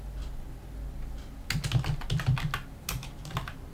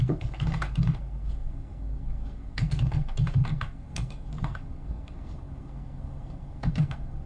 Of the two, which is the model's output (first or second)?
second